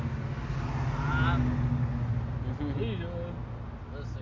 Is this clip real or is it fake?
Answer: real